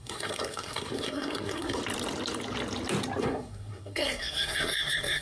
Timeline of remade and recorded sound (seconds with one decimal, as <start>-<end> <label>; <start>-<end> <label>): 0.0-1.8 remade; 1.8-3.2 recorded; 3.2-5.2 remade